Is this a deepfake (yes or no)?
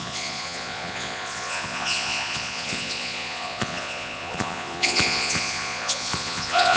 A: yes